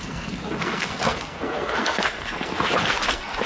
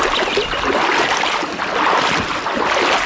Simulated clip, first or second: first